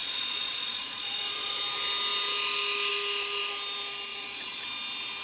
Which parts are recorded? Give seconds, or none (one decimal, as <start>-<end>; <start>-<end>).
1.6-4.1; 4.6-5.2